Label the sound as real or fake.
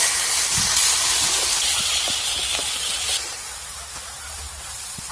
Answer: real